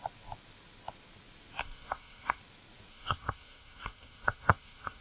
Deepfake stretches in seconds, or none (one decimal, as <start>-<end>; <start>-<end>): 1.6-2.4; 2.9-5.0